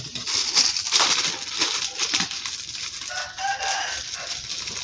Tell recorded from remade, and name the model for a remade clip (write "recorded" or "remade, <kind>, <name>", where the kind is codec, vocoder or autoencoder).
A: recorded